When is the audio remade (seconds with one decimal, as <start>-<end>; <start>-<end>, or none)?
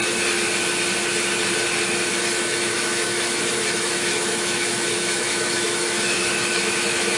2.4-7.2